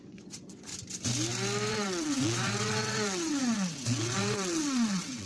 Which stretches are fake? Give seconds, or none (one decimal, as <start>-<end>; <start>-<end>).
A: 0.0-0.7; 1.7-5.3